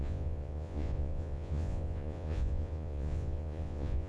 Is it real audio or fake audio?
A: fake